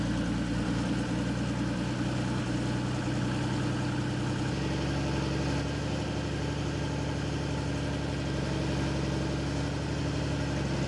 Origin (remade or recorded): recorded